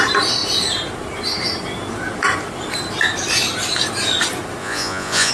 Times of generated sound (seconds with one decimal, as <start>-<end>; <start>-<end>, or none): 4.6-5.3